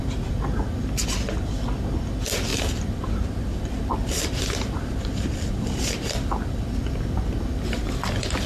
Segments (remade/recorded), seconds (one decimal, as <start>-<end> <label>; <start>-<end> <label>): 0.0-2.5 recorded; 2.5-6.9 remade; 6.9-8.5 recorded